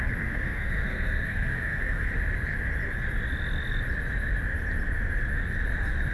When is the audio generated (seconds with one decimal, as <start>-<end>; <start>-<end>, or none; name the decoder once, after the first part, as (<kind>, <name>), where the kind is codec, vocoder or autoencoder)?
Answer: 0.0-2.1 (codec, SNAC)